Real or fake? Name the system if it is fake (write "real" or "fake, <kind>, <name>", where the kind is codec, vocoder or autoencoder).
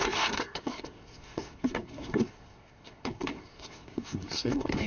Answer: fake, codec, SNAC